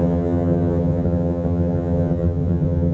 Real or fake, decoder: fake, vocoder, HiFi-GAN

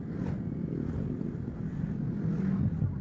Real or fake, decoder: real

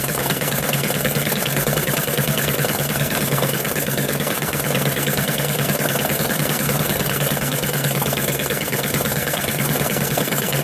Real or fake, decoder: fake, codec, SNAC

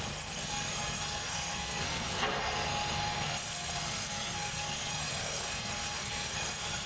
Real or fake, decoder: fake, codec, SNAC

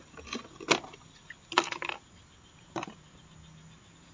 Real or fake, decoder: real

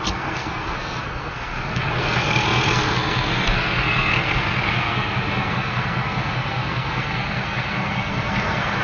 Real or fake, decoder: fake, codec, SNAC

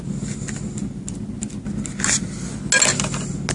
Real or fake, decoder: real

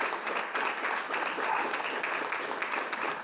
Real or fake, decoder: real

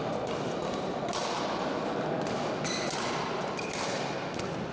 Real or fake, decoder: real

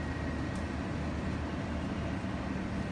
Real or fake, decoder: real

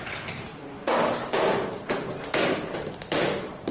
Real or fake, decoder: real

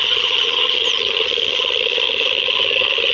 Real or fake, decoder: fake, vocoder, HiFi-GAN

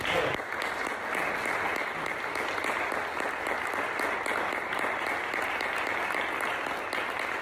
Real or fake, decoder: real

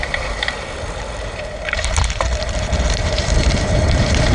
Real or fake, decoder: fake, vocoder, BigVGAN v2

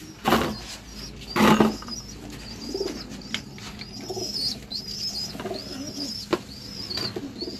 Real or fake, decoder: real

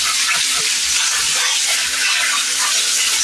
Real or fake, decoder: real